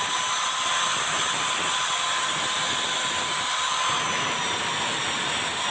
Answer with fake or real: real